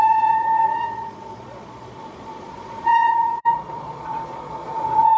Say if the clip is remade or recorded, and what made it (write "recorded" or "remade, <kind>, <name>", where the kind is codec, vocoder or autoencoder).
remade, vocoder, Vocos